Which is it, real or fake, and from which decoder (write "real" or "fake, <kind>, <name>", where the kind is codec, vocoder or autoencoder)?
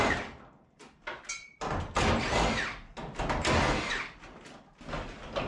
real